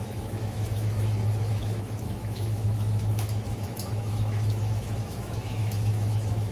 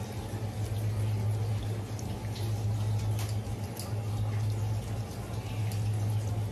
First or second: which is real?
second